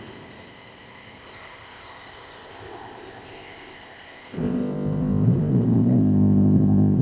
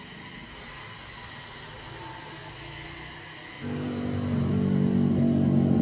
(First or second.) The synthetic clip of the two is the first